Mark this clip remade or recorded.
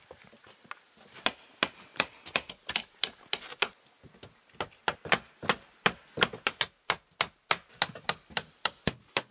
recorded